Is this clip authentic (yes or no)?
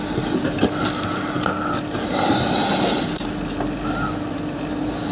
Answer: yes